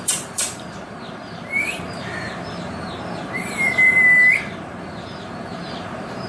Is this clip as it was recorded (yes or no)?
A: no